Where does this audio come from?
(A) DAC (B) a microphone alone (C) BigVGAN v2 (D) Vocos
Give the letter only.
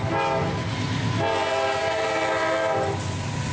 B